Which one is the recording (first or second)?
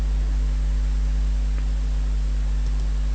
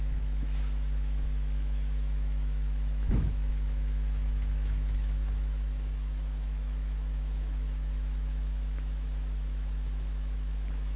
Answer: first